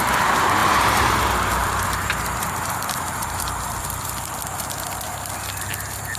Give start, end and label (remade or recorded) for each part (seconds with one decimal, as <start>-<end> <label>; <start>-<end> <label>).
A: 0.0-0.6 recorded; 0.6-1.2 remade; 1.2-1.6 recorded; 1.6-3.4 remade; 3.4-6.2 recorded